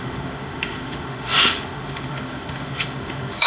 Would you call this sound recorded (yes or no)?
no